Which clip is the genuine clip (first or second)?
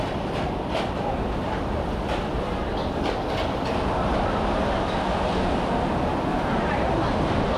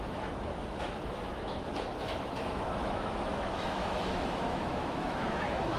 first